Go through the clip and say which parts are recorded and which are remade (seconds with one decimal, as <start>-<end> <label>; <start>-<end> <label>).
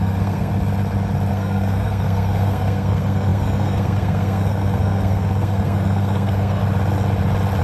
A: 0.0-0.5 remade; 0.5-1.3 recorded; 1.3-6.6 remade; 6.6-7.6 recorded